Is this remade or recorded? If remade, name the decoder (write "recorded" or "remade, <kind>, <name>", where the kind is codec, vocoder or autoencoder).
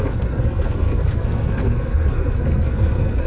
remade, codec, SNAC